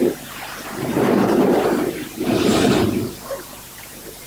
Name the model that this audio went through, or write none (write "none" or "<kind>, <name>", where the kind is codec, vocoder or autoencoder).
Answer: vocoder, BigVGAN v2